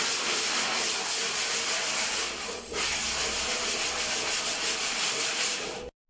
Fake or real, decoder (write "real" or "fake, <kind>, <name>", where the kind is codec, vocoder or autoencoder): real